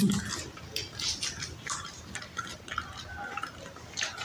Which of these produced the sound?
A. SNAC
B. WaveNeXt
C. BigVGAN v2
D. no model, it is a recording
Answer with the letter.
D